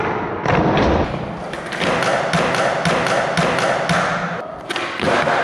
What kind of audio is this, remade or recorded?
recorded